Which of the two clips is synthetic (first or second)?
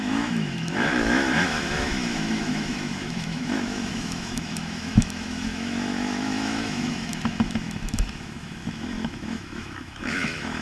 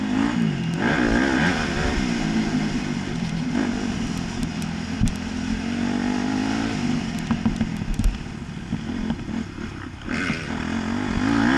first